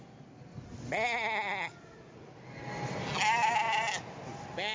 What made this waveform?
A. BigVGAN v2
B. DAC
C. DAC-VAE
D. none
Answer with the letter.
D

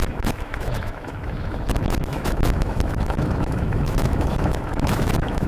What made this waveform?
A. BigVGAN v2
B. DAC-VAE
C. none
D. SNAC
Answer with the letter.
B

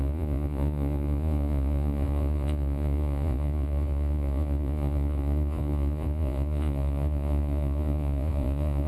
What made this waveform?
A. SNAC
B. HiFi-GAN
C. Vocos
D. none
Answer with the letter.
C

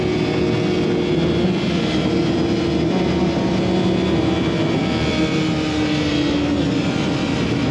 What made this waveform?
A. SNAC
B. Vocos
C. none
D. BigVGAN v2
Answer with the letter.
C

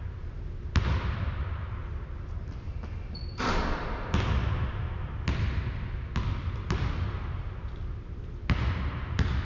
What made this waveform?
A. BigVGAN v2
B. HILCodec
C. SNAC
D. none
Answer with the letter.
D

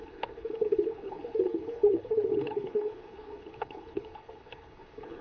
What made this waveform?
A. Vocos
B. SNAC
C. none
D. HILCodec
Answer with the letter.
D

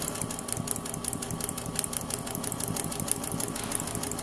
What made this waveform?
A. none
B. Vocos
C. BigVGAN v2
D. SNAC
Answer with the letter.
A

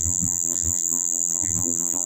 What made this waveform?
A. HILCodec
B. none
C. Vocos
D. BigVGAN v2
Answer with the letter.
D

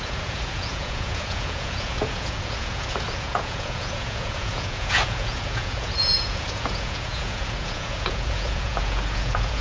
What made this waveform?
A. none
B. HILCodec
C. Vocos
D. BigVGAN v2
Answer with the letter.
C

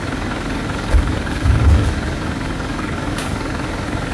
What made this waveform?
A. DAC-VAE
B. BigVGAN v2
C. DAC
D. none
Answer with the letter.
C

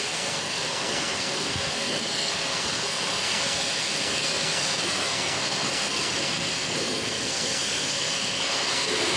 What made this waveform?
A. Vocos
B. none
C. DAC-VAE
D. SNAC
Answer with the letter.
D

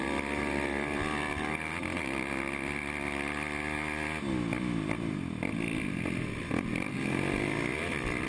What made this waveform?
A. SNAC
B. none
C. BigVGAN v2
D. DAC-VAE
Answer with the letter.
B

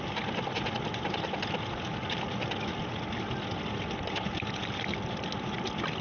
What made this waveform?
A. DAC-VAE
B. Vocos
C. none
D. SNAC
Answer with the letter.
C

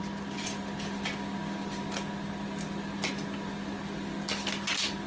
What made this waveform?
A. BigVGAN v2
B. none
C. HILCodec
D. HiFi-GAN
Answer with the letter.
B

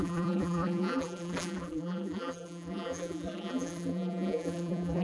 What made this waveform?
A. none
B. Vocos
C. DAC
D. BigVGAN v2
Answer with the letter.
D